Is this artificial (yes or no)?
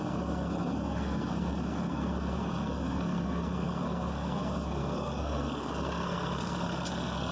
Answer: yes